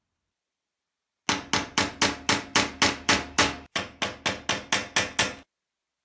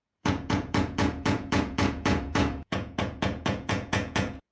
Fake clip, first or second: second